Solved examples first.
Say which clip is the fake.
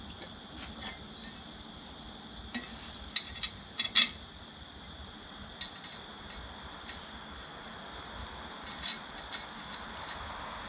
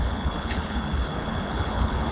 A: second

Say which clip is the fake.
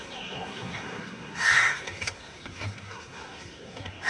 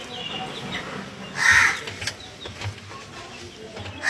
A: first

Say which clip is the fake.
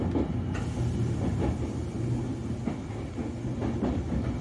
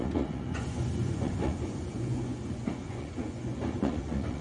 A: second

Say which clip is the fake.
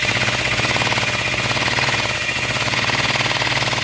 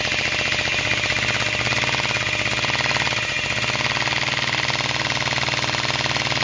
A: first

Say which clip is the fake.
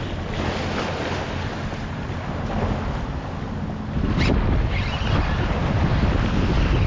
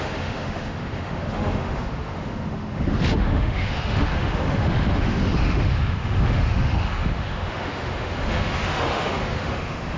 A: second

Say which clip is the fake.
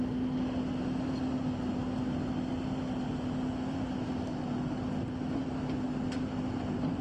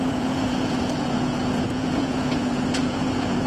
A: second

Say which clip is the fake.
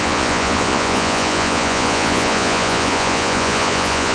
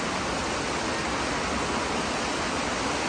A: first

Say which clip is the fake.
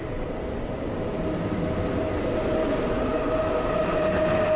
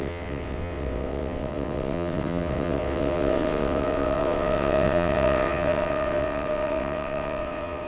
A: second